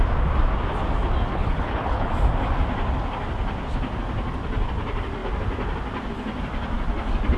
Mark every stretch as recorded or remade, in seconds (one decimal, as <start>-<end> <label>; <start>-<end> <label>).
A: 0.0-1.3 recorded; 1.3-2.1 remade; 2.1-7.4 recorded